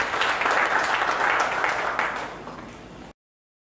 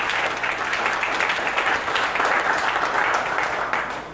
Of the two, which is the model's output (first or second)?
second